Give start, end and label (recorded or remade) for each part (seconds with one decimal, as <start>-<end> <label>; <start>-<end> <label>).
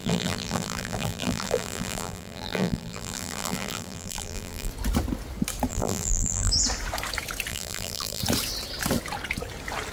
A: 0.0-4.7 remade; 4.7-5.7 recorded; 5.7-6.5 remade; 6.5-7.5 recorded; 7.5-8.2 remade; 8.2-9.9 recorded